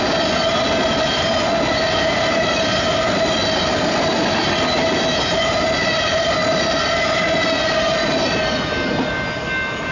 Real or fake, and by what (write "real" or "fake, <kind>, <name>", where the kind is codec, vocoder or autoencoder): real